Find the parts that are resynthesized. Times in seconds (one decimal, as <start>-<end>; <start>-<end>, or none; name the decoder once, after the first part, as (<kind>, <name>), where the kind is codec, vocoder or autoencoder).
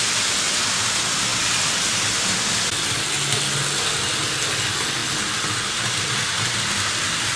none